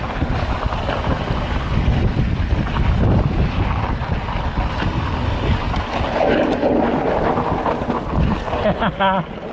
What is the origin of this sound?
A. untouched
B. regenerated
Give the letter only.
A